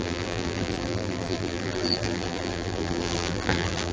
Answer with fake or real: fake